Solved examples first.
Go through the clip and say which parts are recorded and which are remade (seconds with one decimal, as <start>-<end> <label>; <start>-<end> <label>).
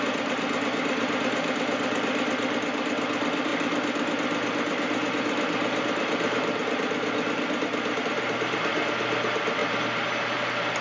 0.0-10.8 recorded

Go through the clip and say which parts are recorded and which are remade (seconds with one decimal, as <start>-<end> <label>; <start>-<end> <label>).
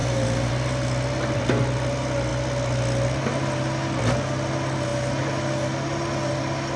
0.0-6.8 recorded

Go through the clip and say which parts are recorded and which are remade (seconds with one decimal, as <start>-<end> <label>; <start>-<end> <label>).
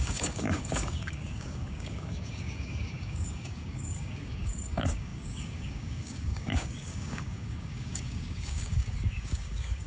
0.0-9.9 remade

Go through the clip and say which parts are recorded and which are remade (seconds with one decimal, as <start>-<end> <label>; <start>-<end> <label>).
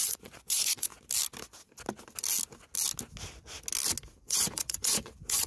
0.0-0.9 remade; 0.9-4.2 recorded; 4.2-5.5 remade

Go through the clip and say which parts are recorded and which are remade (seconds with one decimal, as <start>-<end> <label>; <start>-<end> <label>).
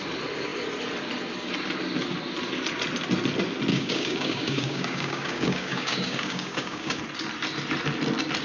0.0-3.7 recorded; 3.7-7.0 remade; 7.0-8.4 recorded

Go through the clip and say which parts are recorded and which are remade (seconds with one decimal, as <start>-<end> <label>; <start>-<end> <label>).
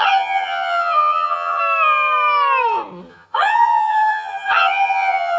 0.0-1.6 remade; 1.6-3.1 recorded; 3.1-5.4 remade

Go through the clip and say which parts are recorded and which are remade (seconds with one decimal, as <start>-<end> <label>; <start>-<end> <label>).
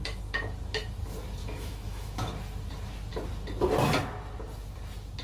0.0-1.4 recorded; 1.4-2.3 remade; 2.3-5.2 recorded